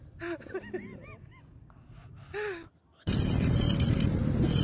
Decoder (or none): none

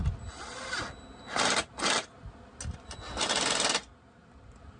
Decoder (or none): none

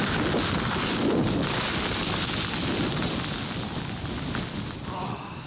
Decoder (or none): none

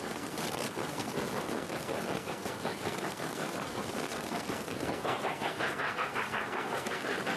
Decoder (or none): codec, SNAC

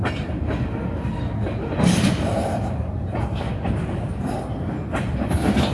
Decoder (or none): none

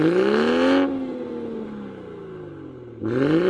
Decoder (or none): none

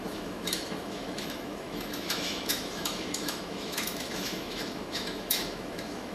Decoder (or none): autoencoder, DAC-VAE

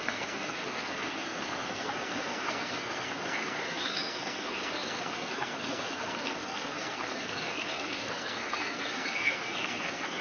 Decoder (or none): codec, SNAC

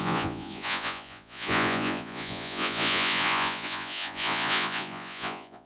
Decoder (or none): vocoder, Vocos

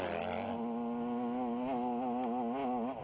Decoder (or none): none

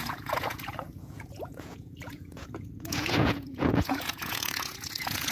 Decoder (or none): vocoder, Vocos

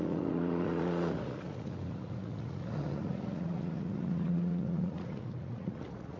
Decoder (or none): vocoder, Vocos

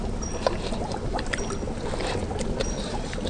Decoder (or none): none